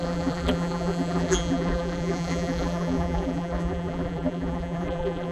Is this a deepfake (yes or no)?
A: yes